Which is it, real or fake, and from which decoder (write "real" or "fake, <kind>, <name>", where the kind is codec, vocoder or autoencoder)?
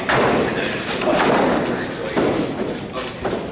real